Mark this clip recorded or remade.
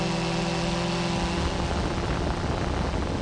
recorded